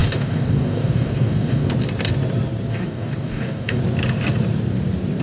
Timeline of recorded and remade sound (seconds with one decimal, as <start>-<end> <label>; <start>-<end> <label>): 0.0-1.7 remade; 1.7-2.7 recorded; 2.7-3.8 remade; 3.8-5.2 recorded